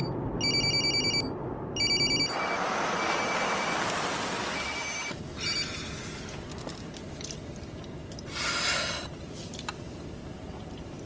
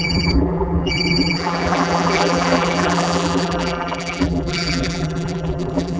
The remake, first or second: second